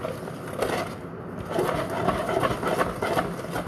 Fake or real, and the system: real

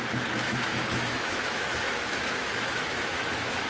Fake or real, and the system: fake, autoencoder, DAC-VAE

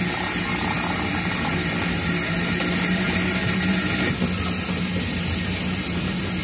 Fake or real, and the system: real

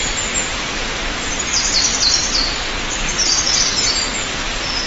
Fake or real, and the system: real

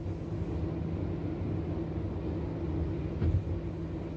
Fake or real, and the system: real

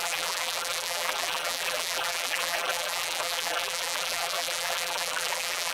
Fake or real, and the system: fake, vocoder, BigVGAN v2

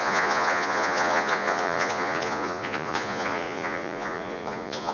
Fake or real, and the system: fake, vocoder, Vocos